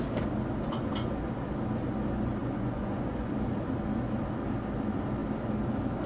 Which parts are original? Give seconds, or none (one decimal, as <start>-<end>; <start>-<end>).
0.0-2.4; 3.3-6.1